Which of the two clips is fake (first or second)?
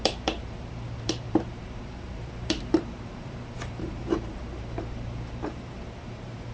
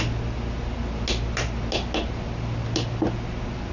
first